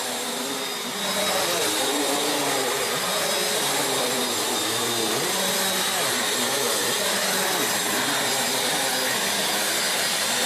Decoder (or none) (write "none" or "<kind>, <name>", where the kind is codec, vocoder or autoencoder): none